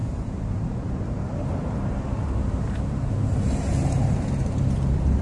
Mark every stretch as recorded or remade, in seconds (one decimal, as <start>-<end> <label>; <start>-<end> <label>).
0.0-5.2 remade